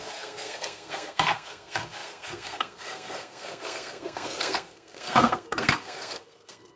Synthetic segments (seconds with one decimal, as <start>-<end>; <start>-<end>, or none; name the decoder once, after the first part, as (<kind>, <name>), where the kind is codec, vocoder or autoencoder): 0.0-6.8 (codec, SNAC)